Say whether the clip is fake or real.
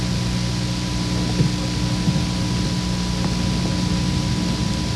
real